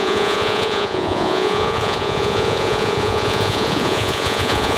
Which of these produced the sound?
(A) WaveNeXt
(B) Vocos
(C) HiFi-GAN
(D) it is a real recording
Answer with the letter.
B